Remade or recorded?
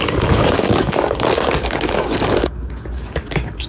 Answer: remade